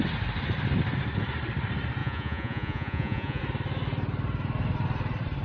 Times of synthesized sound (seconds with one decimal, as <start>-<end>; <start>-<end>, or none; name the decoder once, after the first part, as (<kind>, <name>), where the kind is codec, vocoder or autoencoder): 2.0-3.4 (vocoder, Vocos)

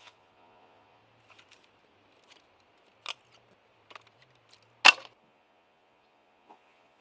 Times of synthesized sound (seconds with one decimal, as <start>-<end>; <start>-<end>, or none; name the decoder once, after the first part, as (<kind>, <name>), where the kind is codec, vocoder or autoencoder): 0.0-1.0 (vocoder, Vocos); 5.2-7.0